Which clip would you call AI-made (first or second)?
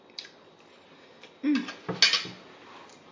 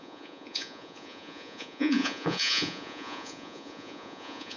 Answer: second